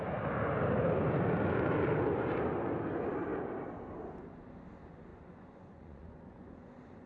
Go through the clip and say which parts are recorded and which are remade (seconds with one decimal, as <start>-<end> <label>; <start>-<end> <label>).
0.0-5.1 recorded; 5.1-7.1 remade